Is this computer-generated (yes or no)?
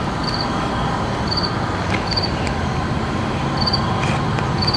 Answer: no